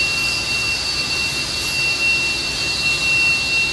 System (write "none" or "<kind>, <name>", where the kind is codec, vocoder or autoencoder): none